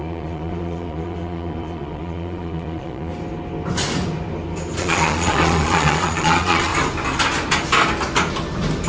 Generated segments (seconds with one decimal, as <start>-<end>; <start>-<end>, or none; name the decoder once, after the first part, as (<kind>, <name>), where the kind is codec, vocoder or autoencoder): 0.0-3.1 (vocoder, Vocos); 4.8-6.7